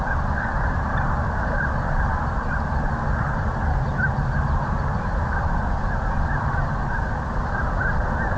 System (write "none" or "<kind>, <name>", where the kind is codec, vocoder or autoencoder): none